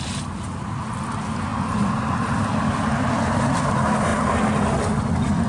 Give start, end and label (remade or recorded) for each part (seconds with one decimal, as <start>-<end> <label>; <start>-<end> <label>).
0.0-5.5 recorded